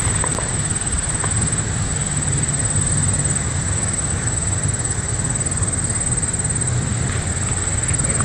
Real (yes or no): yes